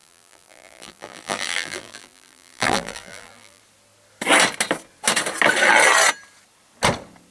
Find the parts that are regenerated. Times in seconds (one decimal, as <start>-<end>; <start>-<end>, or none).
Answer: 0.0-3.6